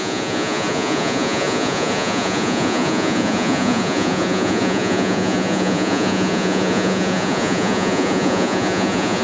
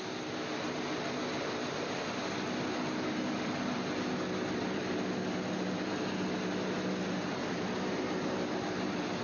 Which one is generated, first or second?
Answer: first